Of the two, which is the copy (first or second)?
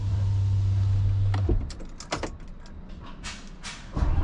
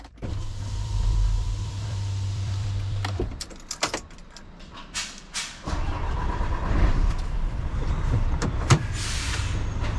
second